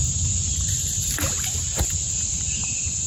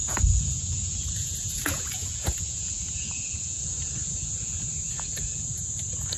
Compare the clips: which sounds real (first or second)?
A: first